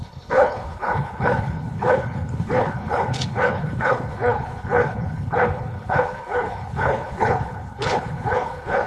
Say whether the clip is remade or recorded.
remade